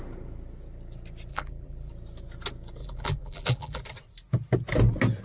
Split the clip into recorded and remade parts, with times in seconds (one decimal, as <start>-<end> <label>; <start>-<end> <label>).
0.0-1.3 recorded; 1.3-1.9 remade; 1.9-2.8 recorded; 2.8-3.8 remade; 3.8-5.2 recorded